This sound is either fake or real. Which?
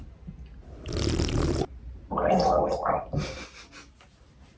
real